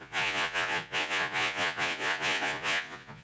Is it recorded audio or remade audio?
remade